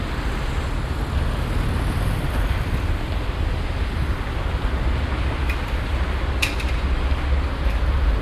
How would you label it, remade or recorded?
recorded